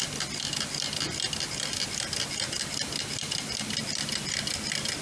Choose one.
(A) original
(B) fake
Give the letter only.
A